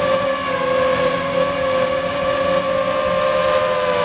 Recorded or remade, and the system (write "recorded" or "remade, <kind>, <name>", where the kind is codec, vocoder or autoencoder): recorded